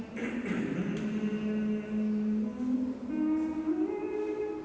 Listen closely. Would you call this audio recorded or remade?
recorded